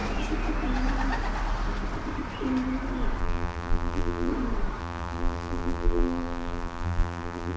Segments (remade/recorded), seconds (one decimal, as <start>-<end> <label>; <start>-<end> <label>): 0.0-3.2 recorded; 3.2-4.3 remade; 4.3-4.8 recorded; 4.8-7.6 remade